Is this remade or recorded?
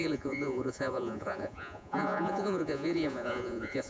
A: remade